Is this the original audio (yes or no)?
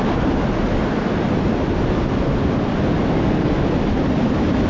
yes